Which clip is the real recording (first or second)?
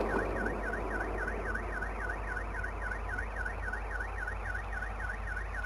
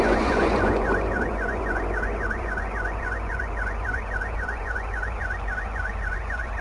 first